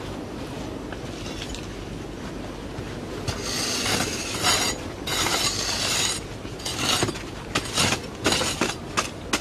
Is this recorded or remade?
recorded